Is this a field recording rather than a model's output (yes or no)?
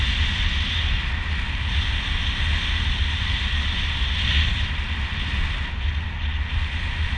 yes